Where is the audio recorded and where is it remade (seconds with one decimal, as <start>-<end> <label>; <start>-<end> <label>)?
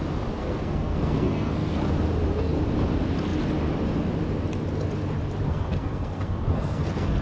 0.0-0.4 recorded; 0.4-1.9 remade; 1.9-5.5 recorded; 5.5-7.2 remade